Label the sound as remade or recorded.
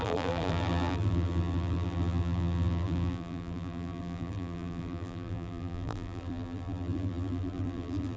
remade